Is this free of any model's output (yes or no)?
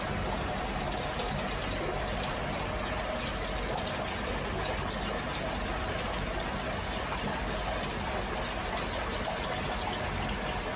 yes